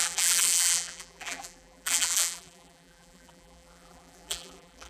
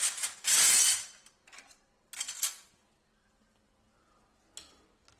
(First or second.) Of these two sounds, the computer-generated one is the first